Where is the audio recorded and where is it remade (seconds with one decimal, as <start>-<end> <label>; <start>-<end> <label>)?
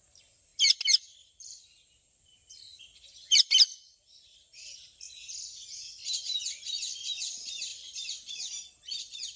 0.0-0.5 remade; 0.5-1.0 recorded; 1.0-9.4 remade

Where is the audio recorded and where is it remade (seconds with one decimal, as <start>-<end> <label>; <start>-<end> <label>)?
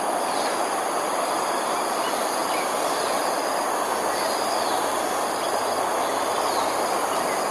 0.0-7.5 recorded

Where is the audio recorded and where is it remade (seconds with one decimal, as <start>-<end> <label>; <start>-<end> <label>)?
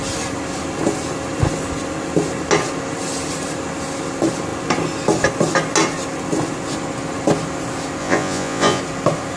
0.0-8.0 recorded; 8.0-8.8 remade; 8.8-9.4 recorded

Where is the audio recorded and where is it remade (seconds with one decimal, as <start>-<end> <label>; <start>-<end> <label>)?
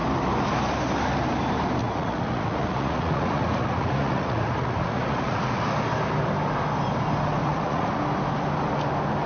0.0-1.8 recorded; 1.8-5.6 remade; 5.6-7.4 recorded; 7.4-8.0 remade; 8.0-9.3 recorded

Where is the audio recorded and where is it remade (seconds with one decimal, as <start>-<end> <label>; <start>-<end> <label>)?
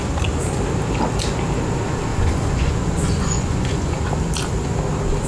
0.0-2.1 recorded; 2.1-4.0 remade; 4.0-5.3 recorded